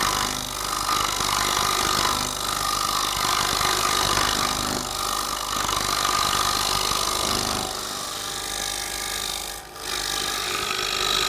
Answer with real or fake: real